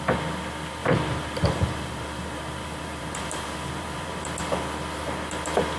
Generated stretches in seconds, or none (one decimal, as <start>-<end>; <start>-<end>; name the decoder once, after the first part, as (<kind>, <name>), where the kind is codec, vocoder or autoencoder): 0.8-4.3 (vocoder, BigVGAN v2)